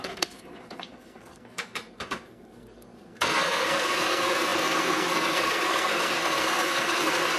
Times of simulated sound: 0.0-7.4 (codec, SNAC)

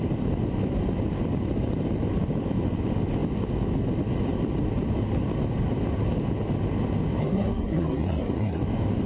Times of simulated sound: 7.2-8.6 (codec, SNAC)

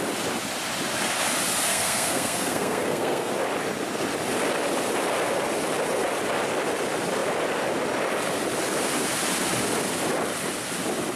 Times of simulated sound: 1.7-3.3 (codec, SNAC)

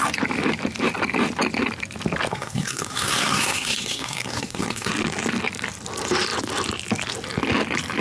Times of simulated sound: 2.3-4.9 (codec, SNAC)

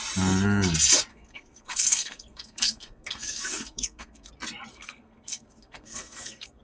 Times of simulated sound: 1.1-4.3 (codec, SNAC); 4.7-6.6